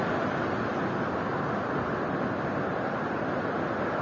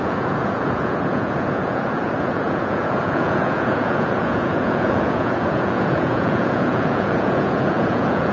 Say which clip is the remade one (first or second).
second